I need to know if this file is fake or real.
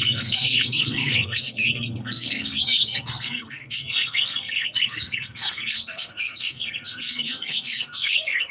fake